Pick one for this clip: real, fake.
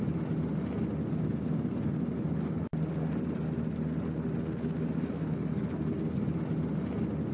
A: real